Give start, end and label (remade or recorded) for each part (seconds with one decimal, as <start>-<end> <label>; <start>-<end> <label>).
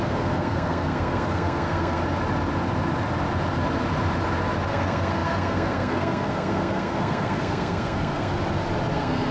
0.0-2.0 remade; 2.0-4.7 recorded; 4.7-8.3 remade; 8.3-8.9 recorded; 8.9-9.3 remade